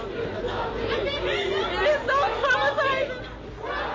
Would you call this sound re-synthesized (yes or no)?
no